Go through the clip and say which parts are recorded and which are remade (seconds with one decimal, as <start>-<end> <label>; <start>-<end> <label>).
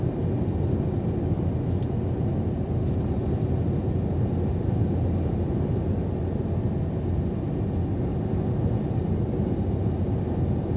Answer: 0.0-10.8 recorded